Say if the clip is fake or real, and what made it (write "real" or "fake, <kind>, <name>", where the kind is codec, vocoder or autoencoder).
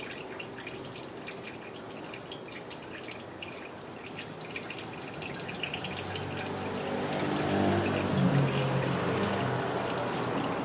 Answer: real